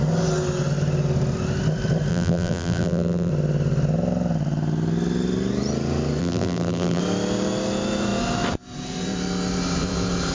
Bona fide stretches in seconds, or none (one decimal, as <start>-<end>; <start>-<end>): 0.0-2.1; 3.3-6.2; 7.0-10.3